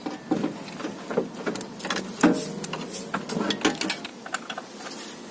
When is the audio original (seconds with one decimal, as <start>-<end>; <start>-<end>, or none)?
0.0-5.3